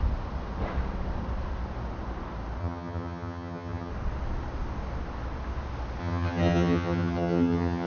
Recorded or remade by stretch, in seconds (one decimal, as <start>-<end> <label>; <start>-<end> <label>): 0.0-2.6 recorded; 2.6-3.9 remade; 3.9-6.0 recorded; 6.0-7.9 remade